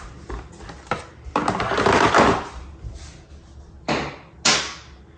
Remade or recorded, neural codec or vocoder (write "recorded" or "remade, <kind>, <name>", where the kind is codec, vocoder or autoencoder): recorded